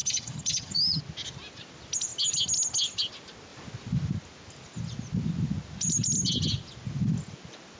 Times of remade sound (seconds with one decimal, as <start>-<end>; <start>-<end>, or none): 0.0-1.0